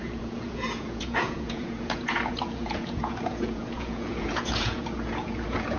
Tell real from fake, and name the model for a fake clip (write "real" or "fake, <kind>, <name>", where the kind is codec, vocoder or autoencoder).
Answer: fake, vocoder, Vocos